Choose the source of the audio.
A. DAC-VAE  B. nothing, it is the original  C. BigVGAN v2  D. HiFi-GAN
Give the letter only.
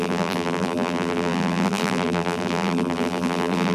C